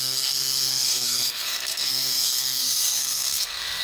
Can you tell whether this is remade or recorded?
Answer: remade